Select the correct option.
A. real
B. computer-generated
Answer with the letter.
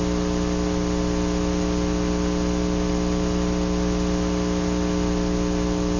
A